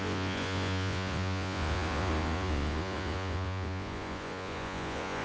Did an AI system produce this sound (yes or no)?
yes